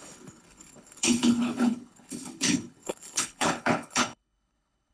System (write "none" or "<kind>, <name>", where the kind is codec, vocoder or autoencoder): codec, HILCodec